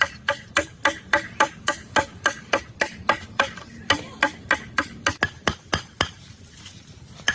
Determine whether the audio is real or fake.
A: fake